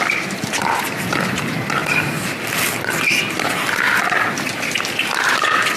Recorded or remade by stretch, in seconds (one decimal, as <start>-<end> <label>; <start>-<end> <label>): 0.0-5.8 recorded